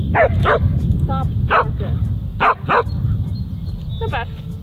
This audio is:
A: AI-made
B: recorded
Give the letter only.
B